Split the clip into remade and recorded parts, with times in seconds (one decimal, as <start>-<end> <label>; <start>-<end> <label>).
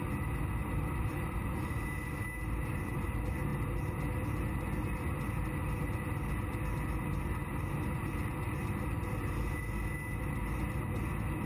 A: 0.0-0.6 recorded; 0.6-1.7 remade; 1.7-11.5 recorded